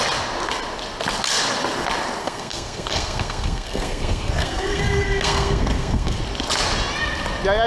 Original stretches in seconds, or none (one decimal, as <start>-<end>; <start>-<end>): 0.0-2.2; 6.2-7.7